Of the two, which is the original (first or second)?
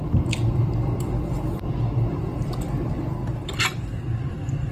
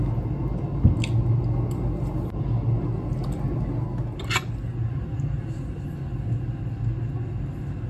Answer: second